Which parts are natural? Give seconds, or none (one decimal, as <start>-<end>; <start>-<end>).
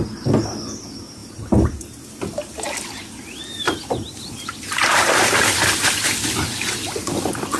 0.0-7.6